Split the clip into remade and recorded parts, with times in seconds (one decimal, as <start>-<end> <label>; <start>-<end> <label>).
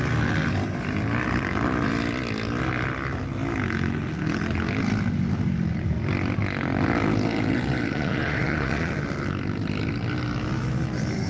0.0-7.9 recorded; 7.9-8.9 remade; 8.9-11.3 recorded